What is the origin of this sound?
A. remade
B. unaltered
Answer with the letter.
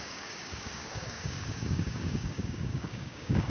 A